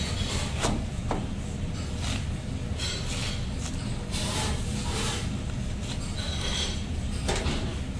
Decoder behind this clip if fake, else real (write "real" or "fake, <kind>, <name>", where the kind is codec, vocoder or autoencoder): real